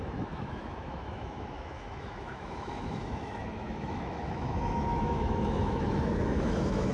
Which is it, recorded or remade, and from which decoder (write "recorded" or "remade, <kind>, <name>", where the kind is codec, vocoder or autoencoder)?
remade, autoencoder, DAC-VAE